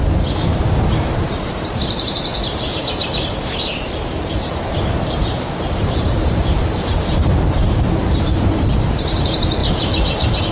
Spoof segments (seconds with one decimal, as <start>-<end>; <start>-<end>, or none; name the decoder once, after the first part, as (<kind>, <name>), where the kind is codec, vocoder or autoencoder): 0.0-9.6 (vocoder, BigVGAN v2)